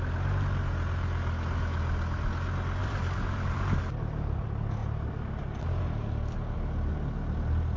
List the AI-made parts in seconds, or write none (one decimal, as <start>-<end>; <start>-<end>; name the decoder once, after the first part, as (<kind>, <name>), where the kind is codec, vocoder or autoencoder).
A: 2.8-3.8 (vocoder, BigVGAN v2)